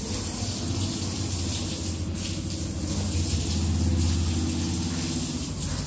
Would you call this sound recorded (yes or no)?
yes